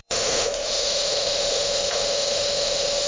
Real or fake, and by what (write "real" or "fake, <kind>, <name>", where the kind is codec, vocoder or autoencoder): fake, autoencoder, DAC-VAE